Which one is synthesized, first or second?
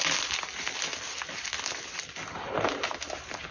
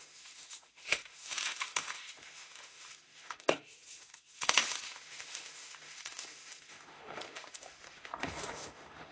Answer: second